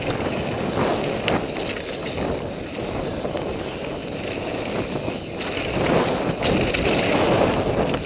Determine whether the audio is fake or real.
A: real